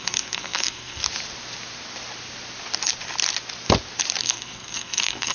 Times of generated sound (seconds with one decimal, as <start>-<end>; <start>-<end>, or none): 0.0-1.0; 4.2-5.3